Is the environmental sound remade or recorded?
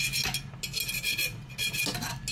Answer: recorded